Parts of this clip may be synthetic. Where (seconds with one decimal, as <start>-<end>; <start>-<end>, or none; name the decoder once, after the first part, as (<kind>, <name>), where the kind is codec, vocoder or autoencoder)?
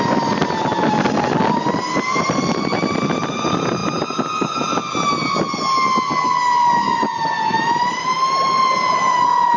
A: none